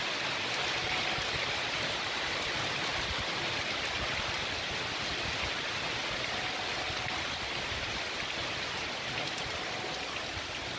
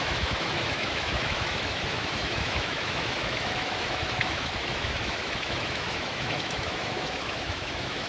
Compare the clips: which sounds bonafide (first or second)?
first